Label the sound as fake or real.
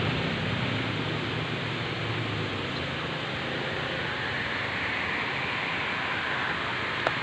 real